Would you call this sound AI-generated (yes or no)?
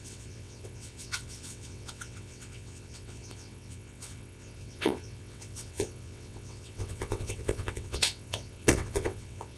yes